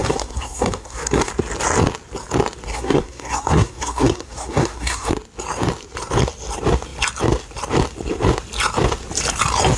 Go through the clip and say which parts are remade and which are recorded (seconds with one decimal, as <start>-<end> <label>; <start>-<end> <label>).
0.0-1.3 remade; 1.3-2.7 recorded; 2.7-5.1 remade; 5.1-9.8 recorded